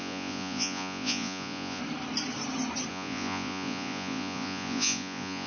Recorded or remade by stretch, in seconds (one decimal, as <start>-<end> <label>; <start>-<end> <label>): 0.0-1.8 remade; 1.8-2.9 recorded; 2.9-5.5 remade